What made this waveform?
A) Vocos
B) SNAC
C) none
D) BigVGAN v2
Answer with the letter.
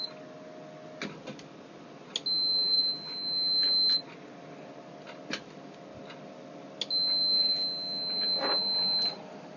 C